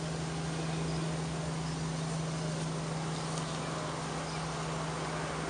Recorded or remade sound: recorded